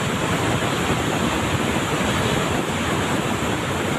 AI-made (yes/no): no